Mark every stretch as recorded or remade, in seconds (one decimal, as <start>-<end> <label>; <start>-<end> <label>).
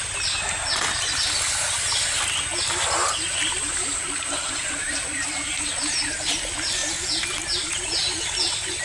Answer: 0.0-3.7 recorded; 3.7-5.7 remade; 5.7-8.8 recorded